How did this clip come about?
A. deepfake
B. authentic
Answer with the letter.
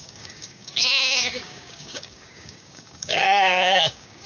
A